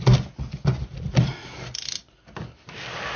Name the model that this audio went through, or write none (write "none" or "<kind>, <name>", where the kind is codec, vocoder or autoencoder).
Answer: none